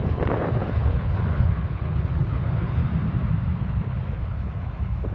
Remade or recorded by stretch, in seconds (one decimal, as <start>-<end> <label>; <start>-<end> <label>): 0.0-2.8 remade; 2.8-3.6 recorded; 3.6-5.1 remade